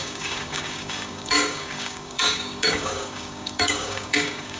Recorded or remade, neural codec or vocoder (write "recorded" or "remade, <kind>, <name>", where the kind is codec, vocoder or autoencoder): remade, codec, DAC